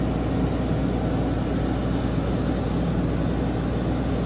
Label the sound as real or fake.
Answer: real